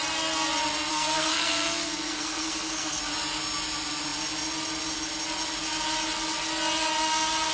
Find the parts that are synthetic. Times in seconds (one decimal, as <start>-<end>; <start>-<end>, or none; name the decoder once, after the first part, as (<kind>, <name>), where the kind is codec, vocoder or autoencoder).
0.9-3.0 (codec, SNAC)